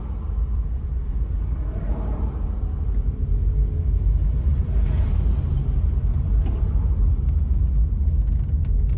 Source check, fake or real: real